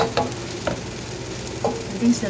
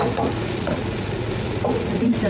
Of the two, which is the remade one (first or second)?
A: second